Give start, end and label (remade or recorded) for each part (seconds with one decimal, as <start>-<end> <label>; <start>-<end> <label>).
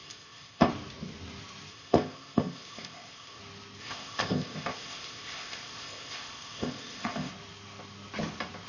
0.0-0.7 remade; 0.7-1.7 recorded; 1.7-3.4 remade; 3.4-3.8 recorded; 3.8-7.3 remade; 7.3-8.7 recorded